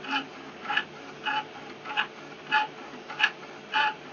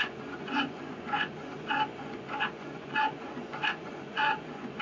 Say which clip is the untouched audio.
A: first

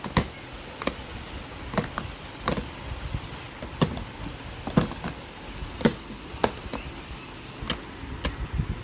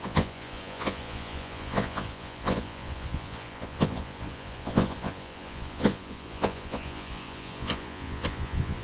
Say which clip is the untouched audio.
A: first